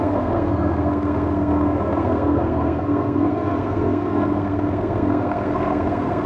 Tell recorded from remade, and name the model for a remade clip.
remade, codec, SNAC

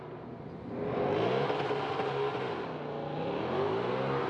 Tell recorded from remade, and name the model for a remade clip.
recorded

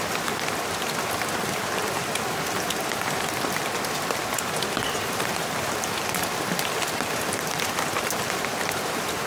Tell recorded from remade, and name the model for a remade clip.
remade, vocoder, BigVGAN v2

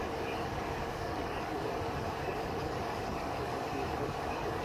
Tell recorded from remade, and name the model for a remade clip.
remade, codec, DAC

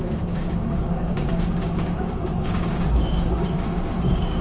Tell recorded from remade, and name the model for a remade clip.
remade, codec, DAC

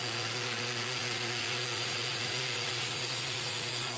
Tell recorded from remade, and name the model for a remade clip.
remade, vocoder, Vocos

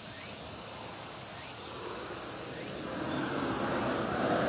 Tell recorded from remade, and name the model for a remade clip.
recorded